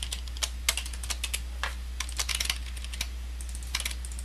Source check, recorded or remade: recorded